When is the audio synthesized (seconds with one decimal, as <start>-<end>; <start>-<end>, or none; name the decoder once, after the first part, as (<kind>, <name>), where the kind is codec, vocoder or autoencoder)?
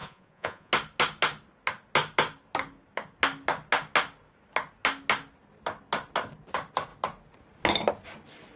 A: 0.0-0.7 (vocoder, Vocos)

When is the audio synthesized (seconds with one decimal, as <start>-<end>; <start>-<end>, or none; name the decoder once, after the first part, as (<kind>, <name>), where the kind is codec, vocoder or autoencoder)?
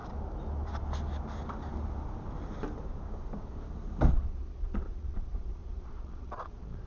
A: 4.1-6.9 (vocoder, Vocos)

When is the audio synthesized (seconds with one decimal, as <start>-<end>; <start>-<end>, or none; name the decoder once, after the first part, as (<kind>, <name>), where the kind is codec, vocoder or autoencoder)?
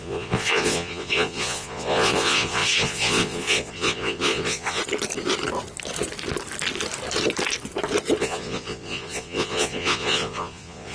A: 0.0-4.8 (vocoder, Vocos); 8.2-10.9